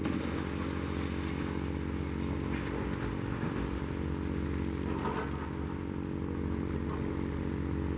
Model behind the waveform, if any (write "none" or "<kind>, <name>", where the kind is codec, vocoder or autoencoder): none